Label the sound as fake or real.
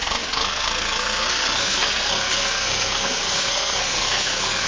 fake